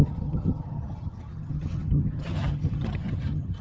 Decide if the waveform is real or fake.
fake